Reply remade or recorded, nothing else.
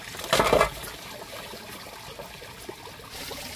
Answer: recorded